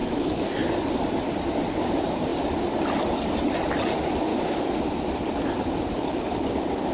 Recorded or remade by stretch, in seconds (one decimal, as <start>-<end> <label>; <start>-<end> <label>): 0.0-0.6 remade; 0.6-4.3 recorded; 4.3-4.8 remade; 4.8-6.9 recorded